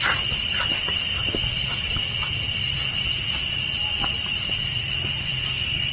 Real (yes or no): no